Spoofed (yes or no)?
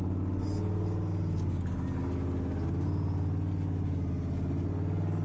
no